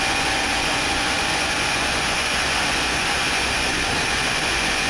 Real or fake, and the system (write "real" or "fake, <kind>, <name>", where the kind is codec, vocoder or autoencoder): fake, vocoder, Vocos